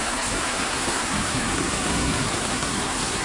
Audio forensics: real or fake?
fake